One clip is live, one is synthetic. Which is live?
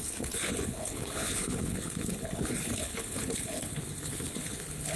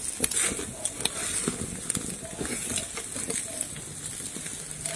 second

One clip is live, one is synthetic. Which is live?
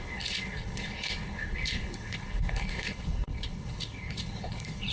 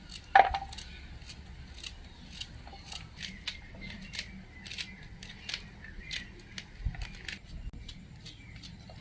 second